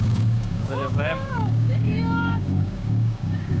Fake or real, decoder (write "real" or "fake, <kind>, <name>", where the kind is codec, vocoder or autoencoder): fake, codec, DAC